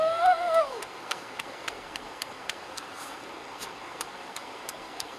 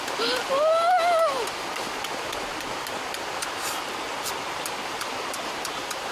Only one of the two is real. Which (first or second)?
second